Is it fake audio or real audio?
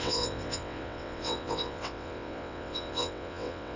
fake